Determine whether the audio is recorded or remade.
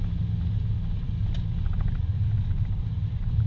recorded